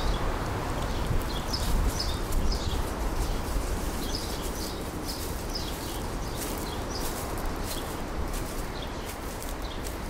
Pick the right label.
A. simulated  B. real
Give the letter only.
A